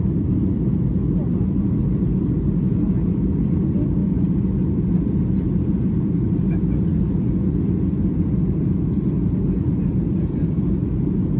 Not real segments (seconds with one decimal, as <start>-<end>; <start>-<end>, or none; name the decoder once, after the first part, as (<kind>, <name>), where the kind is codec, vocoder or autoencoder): none

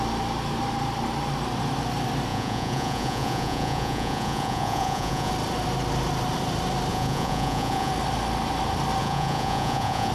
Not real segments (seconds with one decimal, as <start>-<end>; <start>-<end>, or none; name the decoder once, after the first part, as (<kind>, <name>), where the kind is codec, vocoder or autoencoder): 2.3-5.3 (vocoder, Vocos); 6.9-7.9; 9.0-10.1